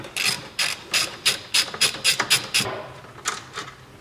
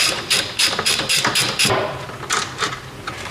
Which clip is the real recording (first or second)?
first